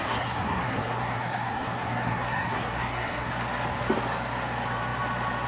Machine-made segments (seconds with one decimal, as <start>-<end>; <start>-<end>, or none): 0.0-3.3